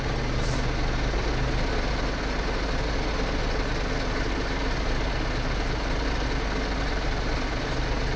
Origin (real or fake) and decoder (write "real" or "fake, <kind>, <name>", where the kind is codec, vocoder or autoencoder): real